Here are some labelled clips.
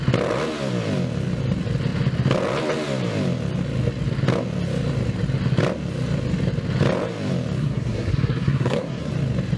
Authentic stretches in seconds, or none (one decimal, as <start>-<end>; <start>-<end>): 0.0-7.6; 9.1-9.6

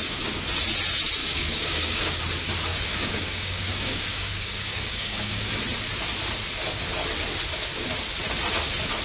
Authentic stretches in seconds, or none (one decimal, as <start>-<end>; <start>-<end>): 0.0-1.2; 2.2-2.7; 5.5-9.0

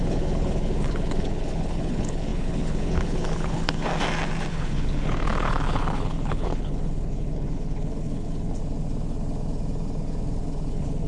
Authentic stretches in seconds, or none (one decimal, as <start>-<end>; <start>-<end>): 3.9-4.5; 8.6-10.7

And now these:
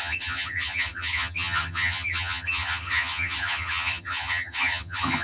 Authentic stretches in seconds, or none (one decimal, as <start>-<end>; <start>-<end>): none